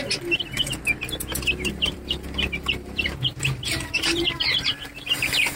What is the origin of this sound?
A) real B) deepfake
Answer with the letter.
B